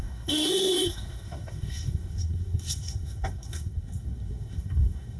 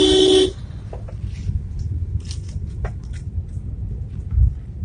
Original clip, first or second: second